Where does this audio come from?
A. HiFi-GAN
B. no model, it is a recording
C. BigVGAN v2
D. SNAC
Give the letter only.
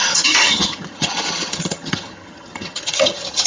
A